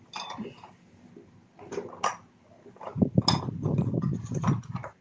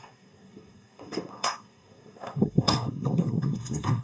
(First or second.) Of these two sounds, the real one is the first